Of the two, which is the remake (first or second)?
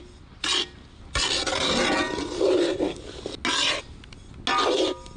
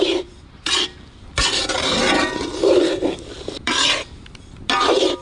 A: second